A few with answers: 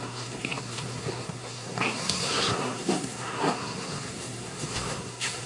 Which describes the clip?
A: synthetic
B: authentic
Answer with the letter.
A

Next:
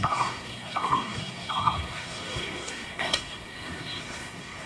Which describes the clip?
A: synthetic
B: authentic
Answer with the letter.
A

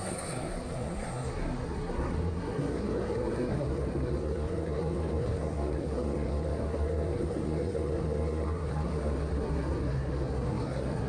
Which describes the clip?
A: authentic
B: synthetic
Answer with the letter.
B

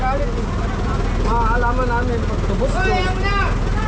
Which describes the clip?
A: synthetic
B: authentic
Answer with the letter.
B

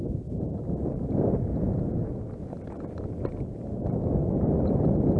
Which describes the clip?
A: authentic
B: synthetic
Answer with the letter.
A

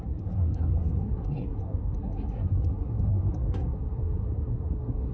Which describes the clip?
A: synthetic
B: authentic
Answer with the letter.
A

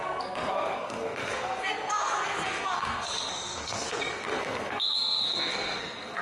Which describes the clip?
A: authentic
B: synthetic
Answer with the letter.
B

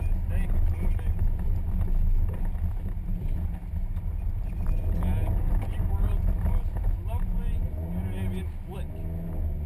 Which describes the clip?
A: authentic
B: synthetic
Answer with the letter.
A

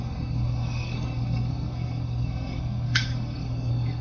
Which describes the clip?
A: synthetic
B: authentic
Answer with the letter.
A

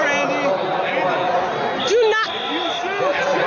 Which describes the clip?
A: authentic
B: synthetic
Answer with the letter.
A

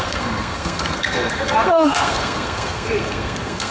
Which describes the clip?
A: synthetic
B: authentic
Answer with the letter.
A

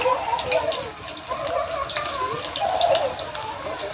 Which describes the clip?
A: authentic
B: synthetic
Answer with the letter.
A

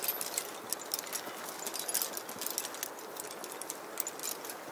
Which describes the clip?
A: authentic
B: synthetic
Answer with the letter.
A